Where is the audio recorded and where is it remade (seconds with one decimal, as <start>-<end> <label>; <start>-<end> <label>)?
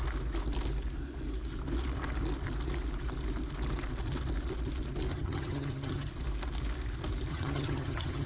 0.0-5.1 recorded; 5.1-6.1 remade; 6.1-7.3 recorded; 7.3-8.3 remade